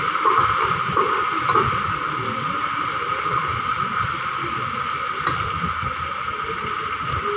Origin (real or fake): fake